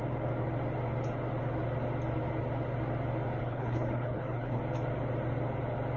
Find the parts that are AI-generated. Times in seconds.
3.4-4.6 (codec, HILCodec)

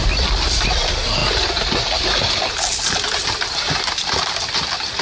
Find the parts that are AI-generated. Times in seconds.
none

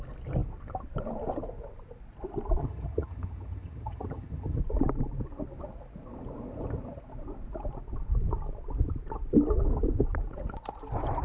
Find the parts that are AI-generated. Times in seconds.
2.6-4.6 (vocoder, HiFi-GAN)